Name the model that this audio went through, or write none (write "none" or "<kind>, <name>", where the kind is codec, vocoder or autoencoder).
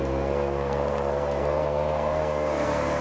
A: codec, SNAC